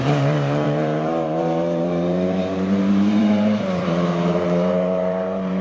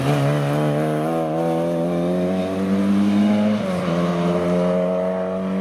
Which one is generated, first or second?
first